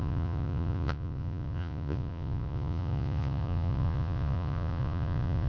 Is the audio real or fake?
fake